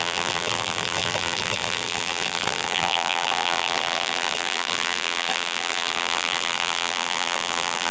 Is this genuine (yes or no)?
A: no